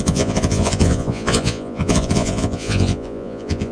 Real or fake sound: fake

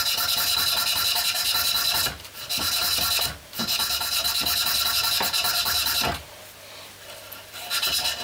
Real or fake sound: real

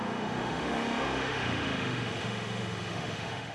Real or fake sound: fake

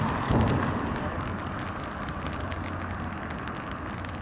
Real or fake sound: real